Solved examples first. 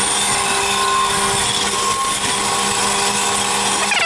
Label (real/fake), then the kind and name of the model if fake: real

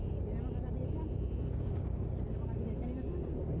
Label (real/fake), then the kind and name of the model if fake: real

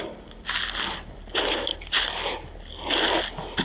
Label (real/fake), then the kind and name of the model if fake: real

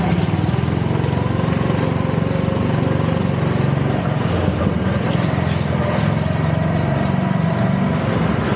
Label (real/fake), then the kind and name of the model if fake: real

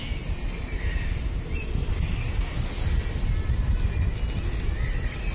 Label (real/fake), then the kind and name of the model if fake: real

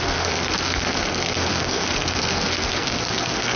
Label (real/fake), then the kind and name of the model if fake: fake, codec, SNAC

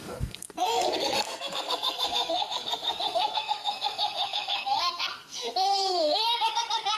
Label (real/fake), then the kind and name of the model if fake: fake, codec, SNAC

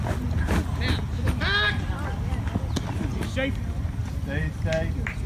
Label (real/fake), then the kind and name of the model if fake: real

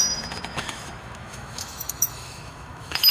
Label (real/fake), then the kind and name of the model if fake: fake, autoencoder, DAC-VAE